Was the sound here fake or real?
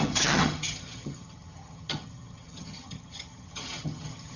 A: fake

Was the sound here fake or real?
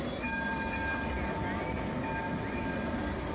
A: real